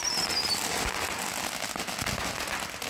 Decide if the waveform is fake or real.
real